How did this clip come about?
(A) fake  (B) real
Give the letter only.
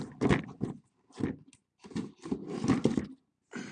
B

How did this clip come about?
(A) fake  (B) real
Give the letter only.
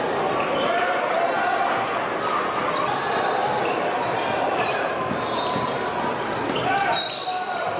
A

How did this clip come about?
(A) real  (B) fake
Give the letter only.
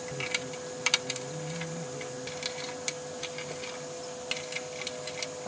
A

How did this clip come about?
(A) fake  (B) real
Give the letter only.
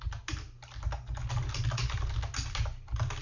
B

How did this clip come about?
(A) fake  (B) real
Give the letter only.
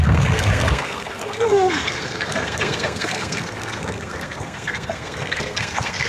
A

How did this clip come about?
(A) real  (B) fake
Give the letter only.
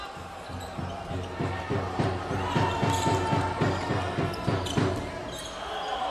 A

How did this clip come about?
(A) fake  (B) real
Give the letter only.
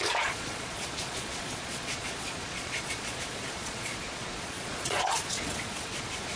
A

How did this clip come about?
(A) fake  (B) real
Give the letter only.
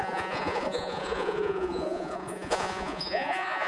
A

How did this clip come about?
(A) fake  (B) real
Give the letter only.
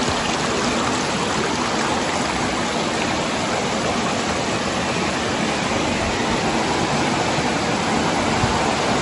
B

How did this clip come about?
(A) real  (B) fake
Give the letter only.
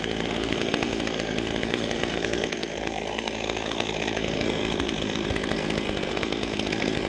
B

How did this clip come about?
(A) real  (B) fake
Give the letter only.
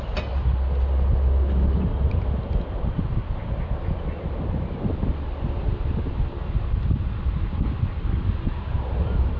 A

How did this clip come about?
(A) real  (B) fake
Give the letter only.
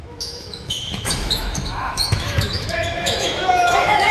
B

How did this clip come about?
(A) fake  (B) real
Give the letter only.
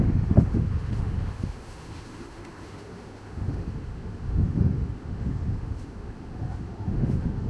A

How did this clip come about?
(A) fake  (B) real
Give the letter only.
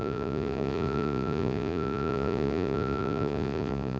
A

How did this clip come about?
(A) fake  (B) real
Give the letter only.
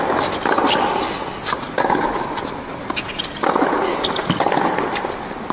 B